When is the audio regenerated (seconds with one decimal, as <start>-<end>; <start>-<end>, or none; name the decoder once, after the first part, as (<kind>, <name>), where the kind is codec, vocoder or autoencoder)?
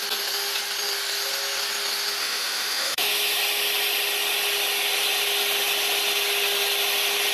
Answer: 2.2-3.1 (autoencoder, DAC-VAE)